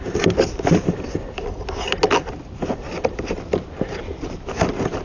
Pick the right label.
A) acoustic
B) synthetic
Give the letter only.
A